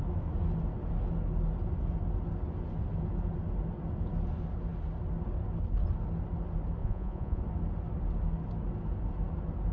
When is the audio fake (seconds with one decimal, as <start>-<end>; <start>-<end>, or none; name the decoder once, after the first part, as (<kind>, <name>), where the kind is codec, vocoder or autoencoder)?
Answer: 6.8-7.4 (vocoder, Vocos)